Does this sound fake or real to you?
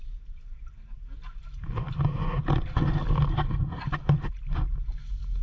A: real